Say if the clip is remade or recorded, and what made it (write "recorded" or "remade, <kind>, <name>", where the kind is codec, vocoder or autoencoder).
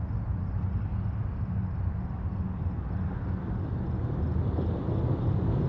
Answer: recorded